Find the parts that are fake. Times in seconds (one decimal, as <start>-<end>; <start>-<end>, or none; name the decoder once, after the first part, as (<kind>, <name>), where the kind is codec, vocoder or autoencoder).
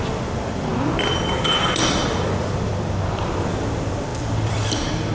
0.0-0.7 (vocoder, BigVGAN v2); 1.3-5.1